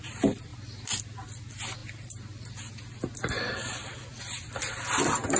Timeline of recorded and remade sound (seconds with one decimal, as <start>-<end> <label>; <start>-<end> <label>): 0.0-0.5 remade; 0.5-1.0 recorded; 1.0-5.4 remade